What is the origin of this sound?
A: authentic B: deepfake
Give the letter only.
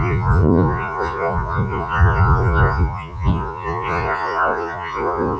B